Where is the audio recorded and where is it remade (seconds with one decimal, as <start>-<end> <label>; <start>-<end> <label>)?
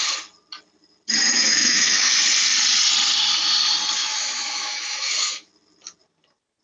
0.0-1.3 recorded; 1.3-2.1 remade; 2.1-4.0 recorded; 4.0-5.5 remade; 5.5-6.6 recorded